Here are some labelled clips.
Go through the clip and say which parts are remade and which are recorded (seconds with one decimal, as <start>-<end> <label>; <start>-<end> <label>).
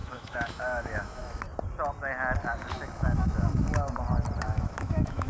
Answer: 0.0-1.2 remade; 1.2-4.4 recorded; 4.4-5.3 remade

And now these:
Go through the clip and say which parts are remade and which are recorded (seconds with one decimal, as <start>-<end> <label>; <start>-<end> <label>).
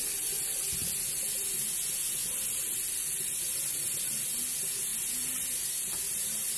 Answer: 0.0-6.6 recorded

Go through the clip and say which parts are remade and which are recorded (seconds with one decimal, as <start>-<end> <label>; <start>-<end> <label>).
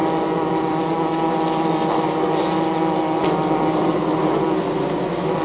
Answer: 0.0-5.4 recorded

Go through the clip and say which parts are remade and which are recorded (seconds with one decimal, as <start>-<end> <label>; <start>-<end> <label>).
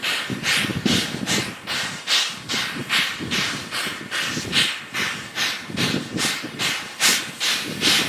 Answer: 0.0-8.1 recorded